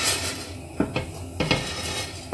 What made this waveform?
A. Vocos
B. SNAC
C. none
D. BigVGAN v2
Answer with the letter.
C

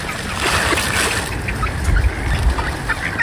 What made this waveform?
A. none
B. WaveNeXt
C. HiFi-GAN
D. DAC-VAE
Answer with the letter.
A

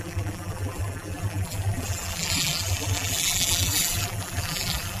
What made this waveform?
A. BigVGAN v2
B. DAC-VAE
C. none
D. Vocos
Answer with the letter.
A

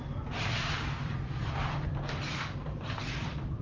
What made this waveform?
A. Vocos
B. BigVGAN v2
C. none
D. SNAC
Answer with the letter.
B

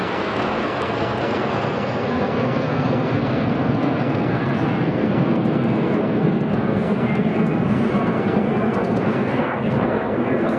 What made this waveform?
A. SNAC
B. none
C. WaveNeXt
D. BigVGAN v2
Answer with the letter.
A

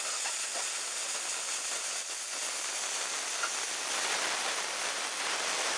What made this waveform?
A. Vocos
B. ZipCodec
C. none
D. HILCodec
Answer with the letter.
C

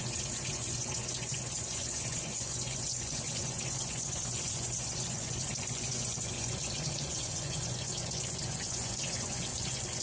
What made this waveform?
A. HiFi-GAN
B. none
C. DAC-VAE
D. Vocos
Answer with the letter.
D